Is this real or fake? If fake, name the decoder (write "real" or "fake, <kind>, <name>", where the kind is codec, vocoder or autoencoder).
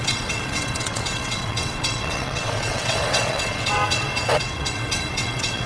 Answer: fake, vocoder, WaveNeXt